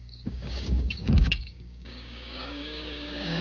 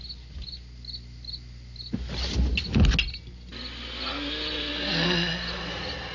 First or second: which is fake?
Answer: first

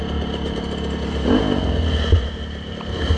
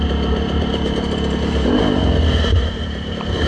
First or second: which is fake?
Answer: second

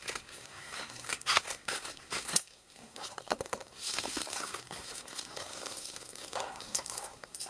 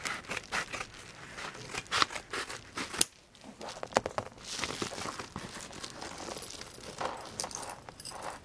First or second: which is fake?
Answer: first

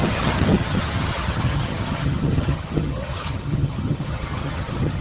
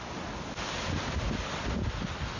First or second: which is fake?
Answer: first